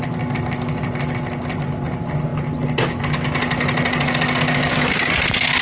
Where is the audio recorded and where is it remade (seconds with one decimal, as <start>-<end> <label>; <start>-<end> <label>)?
0.0-4.6 recorded; 4.6-5.1 remade; 5.1-5.6 recorded